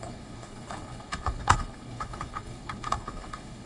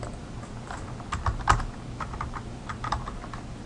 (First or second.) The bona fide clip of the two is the second